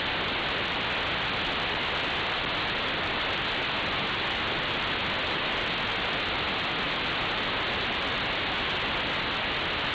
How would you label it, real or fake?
real